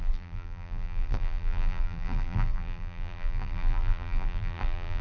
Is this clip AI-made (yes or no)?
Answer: yes